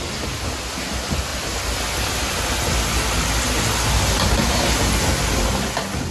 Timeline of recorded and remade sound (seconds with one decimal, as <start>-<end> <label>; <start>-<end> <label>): 0.0-6.1 recorded